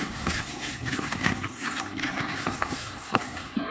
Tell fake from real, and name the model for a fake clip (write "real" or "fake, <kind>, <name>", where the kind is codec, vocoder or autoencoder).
fake, codec, SNAC